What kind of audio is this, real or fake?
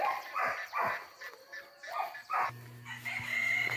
real